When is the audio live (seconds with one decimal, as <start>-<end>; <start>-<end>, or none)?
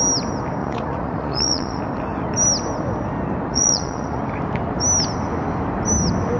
0.0-0.6; 1.8-3.5; 4.2-6.4